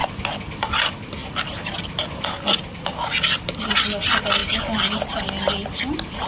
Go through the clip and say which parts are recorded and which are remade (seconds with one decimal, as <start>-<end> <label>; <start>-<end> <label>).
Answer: 0.0-6.3 recorded